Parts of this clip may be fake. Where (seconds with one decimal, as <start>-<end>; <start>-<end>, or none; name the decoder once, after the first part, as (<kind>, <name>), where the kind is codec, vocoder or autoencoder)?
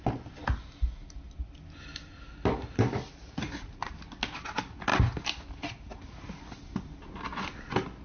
3.2-3.9 (vocoder, Vocos)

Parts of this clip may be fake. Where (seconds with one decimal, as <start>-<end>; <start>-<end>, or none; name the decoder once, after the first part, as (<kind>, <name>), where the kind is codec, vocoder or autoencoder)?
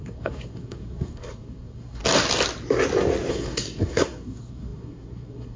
0.0-2.0 (codec, SNAC); 3.3-5.6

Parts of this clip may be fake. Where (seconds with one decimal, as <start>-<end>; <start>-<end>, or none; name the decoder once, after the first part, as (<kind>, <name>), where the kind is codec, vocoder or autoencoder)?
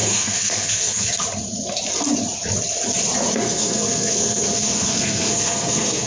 0.0-1.1 (codec, SNAC); 3.4-6.1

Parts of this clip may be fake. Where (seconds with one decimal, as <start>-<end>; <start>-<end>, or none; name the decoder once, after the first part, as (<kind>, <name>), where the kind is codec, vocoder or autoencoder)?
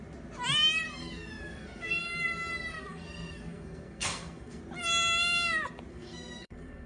1.0-1.9 (codec, SNAC); 2.7-4.6; 5.9-6.9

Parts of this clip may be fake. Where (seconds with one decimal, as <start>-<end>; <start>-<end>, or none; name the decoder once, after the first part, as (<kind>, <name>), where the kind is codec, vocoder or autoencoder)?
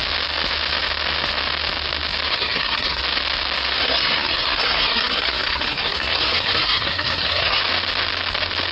2.3-3.0 (codec, SNAC); 3.8-7.6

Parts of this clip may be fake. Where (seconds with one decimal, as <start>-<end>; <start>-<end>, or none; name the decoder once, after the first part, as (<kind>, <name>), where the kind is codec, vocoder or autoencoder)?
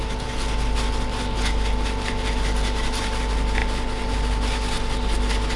none